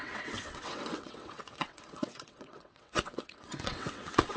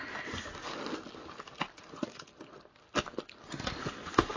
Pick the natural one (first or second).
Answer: second